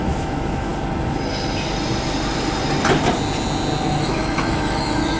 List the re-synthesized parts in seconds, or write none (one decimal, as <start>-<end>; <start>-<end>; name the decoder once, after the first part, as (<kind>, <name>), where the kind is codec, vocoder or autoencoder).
0.0-0.7 (autoencoder, DAC-VAE); 3.8-5.2

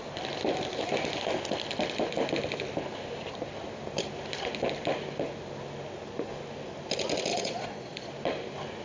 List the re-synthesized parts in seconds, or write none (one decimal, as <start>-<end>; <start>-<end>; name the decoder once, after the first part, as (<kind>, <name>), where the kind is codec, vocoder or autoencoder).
7.3-8.1 (vocoder, Vocos)